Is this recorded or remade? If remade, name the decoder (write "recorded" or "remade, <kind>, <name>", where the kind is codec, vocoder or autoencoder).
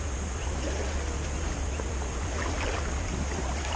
recorded